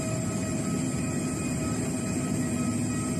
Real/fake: real